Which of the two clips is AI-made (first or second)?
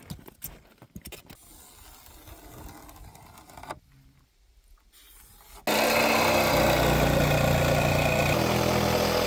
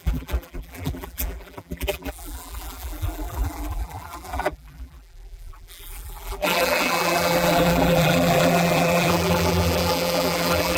second